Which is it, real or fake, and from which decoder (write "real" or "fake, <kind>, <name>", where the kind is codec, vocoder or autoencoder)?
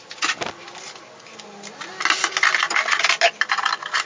real